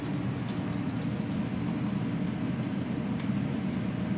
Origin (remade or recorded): recorded